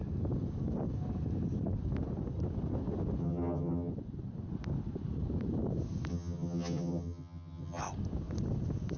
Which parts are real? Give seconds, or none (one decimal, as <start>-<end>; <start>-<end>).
0.0-3.2; 3.9-6.1; 7.8-9.0